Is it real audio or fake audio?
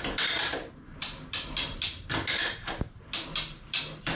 real